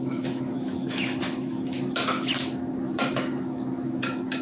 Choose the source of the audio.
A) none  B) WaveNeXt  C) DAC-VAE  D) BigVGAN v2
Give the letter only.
C